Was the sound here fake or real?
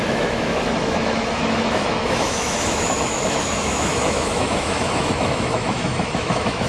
fake